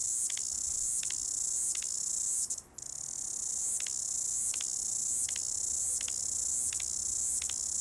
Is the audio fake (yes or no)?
no